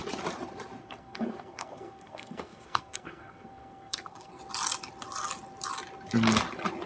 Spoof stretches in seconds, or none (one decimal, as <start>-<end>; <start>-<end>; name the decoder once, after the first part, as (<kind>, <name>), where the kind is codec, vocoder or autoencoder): 0.8-4.4 (codec, SNAC)